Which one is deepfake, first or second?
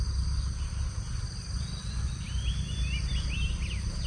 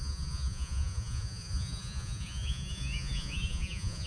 second